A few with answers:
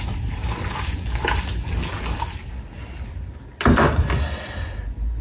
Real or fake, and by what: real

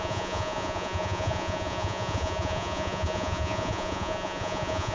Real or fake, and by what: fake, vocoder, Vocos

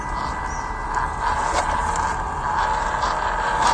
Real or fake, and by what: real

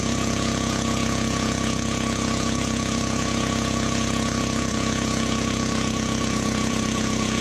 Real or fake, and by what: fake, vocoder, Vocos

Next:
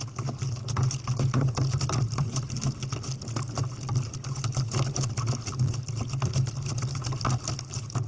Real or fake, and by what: real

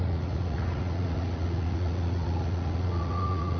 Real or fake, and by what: fake, vocoder, Vocos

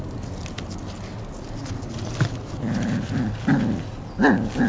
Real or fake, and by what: real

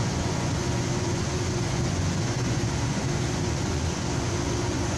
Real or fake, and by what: fake, vocoder, Vocos